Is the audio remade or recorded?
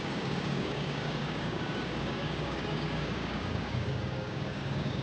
remade